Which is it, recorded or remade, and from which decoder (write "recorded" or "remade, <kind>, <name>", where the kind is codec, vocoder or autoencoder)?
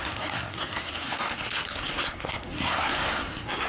remade, codec, SNAC